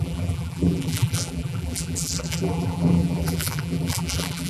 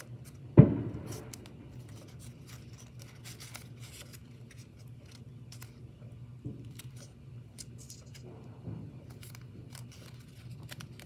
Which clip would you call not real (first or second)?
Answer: first